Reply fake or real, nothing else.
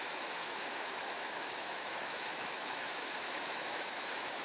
fake